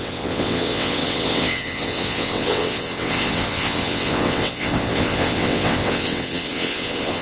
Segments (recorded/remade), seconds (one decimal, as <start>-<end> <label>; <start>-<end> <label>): 0.0-7.2 remade